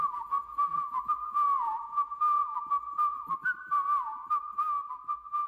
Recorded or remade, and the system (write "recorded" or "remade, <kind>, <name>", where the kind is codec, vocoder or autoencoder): recorded